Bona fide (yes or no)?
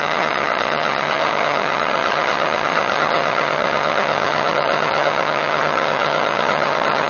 no